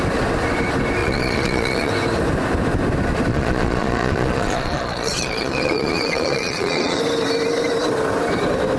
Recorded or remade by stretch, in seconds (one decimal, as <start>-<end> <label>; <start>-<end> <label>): 0.0-1.0 recorded; 1.0-1.9 remade; 1.9-3.3 recorded; 3.3-7.0 remade; 7.0-8.8 recorded